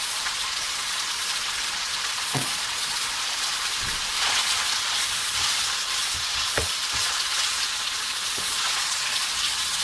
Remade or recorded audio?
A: remade